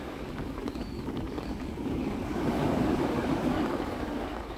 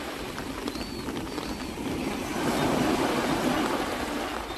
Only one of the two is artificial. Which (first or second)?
first